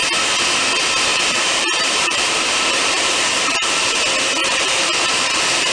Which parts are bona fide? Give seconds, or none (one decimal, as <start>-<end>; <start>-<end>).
0.0-1.1; 4.0-4.4